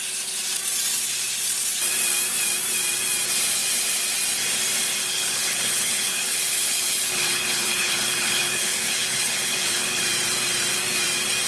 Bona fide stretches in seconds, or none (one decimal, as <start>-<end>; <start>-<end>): 0.0-5.0; 10.0-11.5